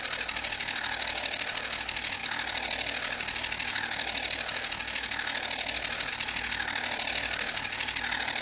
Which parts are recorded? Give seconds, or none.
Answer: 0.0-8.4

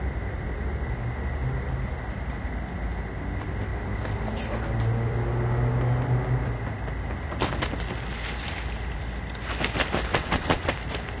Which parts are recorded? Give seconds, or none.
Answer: 0.0-10.1; 10.7-11.2